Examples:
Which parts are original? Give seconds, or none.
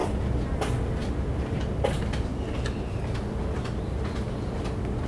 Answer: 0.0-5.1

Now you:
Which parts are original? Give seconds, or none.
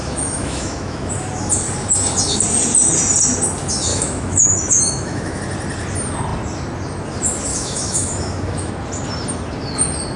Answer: 1.1-3.9; 5.4-7.5; 8.7-10.2